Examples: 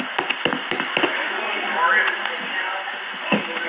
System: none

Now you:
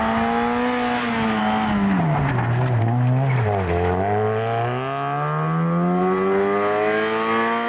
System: none